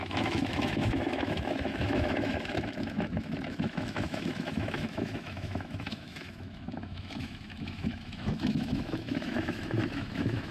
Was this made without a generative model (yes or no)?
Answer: no